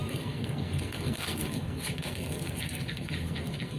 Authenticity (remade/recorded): remade